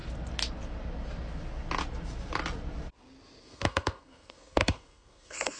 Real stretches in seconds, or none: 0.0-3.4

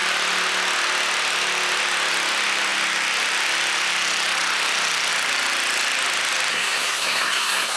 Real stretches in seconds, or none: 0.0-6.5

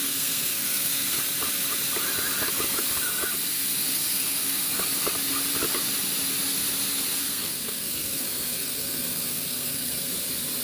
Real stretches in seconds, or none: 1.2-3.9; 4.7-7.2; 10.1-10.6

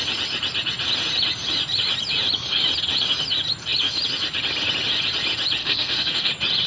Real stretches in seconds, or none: 0.0-5.6; 6.3-6.7

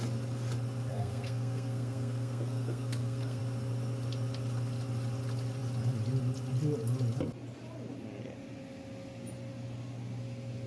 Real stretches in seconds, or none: 0.0-0.9; 3.4-10.7

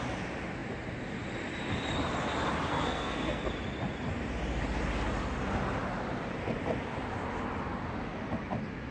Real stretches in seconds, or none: 0.0-2.7; 3.5-8.9